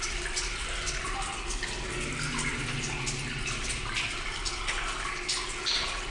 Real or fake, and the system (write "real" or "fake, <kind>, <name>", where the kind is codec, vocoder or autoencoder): real